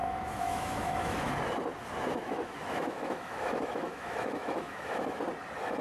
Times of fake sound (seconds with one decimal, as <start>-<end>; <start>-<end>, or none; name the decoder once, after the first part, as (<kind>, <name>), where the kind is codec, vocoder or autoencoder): 0.0-1.3 (autoencoder, DAC-VAE); 2.1-5.2